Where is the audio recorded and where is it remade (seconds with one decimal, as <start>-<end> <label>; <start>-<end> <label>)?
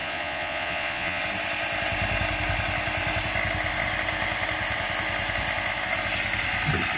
0.0-1.2 remade; 1.2-7.0 recorded